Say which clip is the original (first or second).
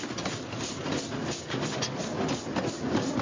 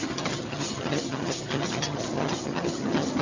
first